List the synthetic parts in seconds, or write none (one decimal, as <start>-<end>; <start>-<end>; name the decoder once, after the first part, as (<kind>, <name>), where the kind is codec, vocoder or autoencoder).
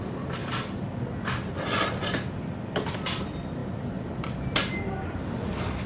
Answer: 0.0-5.9 (vocoder, BigVGAN v2)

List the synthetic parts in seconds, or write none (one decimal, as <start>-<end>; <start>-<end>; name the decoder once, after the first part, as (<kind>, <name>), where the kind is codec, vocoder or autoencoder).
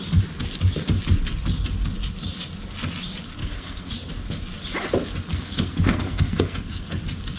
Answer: 3.4-3.9 (codec, SNAC); 5.3-7.0